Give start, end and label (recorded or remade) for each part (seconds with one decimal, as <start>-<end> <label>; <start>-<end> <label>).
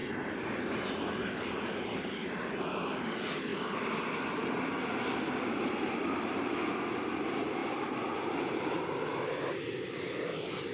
0.0-10.7 recorded